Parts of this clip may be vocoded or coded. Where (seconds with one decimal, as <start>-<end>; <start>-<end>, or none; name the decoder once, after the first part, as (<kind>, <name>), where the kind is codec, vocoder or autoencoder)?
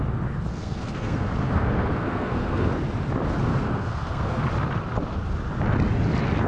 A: 0.5-2.7 (codec, SNAC); 3.5-4.4